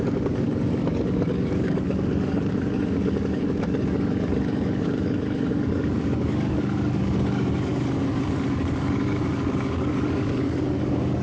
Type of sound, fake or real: fake